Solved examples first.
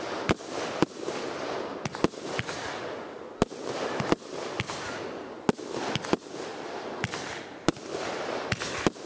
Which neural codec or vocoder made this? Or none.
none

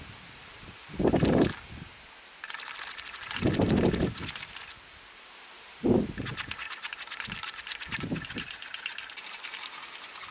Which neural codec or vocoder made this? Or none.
none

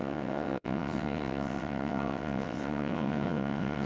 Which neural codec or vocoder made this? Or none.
vocoder, WaveNeXt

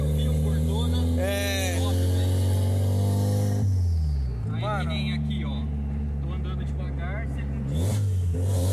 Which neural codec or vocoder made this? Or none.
none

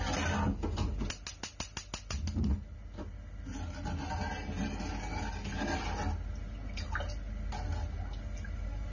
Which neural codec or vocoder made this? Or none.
none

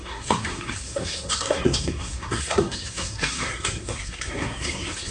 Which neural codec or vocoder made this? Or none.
codec, SNAC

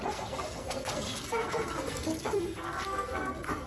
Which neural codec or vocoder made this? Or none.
codec, SNAC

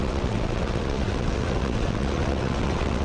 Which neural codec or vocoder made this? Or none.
vocoder, WaveNeXt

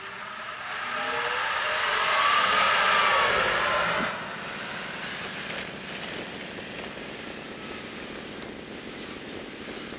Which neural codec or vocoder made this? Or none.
none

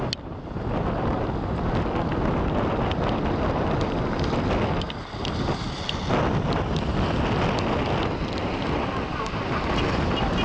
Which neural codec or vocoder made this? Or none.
none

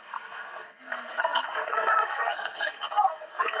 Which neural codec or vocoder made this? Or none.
codec, SNAC